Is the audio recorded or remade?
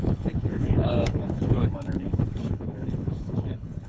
remade